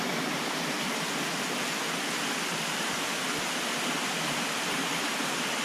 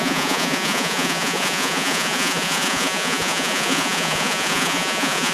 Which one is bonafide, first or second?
first